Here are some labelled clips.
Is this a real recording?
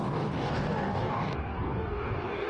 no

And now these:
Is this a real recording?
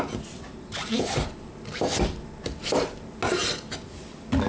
yes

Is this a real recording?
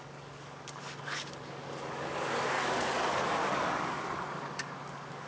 no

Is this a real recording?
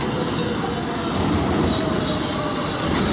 yes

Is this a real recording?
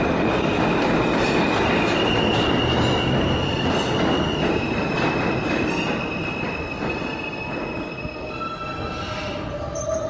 yes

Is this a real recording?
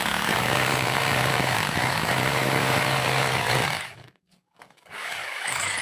no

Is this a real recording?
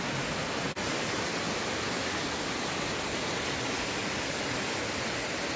yes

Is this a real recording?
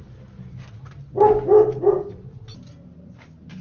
yes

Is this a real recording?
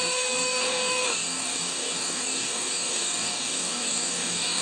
no